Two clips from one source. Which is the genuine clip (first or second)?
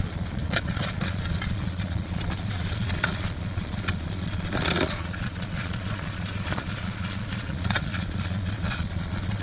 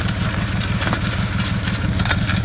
second